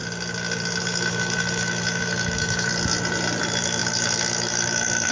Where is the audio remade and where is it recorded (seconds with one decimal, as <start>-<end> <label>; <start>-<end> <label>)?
0.0-0.8 recorded; 0.8-2.7 remade; 2.7-3.4 recorded; 3.4-5.1 remade

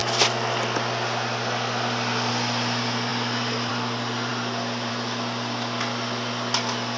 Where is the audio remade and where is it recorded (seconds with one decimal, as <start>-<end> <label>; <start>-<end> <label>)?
0.0-7.0 recorded

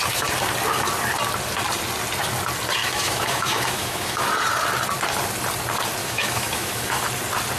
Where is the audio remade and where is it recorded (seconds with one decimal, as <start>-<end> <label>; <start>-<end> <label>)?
0.0-2.8 recorded; 2.8-4.2 remade; 4.2-6.0 recorded; 6.0-7.0 remade; 7.0-7.6 recorded

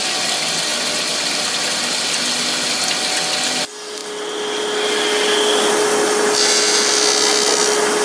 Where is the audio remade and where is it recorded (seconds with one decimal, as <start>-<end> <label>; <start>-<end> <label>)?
0.0-8.0 recorded

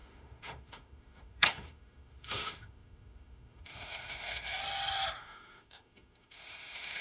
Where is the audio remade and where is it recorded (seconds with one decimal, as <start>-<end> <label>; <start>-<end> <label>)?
0.0-4.6 remade; 4.6-5.2 recorded; 5.2-7.0 remade

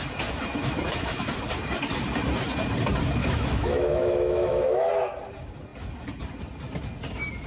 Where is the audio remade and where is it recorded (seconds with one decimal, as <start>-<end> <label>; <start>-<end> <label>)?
0.0-0.6 recorded; 0.6-1.3 remade; 1.3-3.2 recorded; 3.2-4.9 remade; 4.9-7.5 recorded